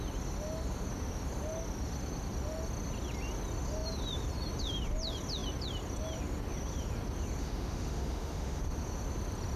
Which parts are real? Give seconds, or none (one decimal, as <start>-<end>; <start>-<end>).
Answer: 0.0-7.4; 8.6-9.6